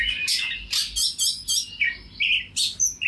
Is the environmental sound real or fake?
real